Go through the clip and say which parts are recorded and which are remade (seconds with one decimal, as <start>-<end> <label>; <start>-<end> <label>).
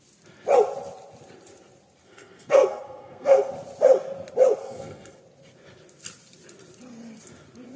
0.0-2.0 recorded; 2.0-3.5 remade; 3.5-4.6 recorded; 4.6-5.2 remade; 5.2-7.8 recorded